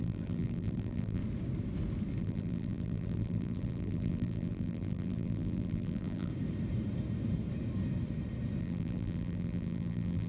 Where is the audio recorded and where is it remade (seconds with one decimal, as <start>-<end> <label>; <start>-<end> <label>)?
0.0-1.2 remade; 1.2-2.2 recorded; 2.2-6.3 remade; 6.3-8.6 recorded; 8.6-10.3 remade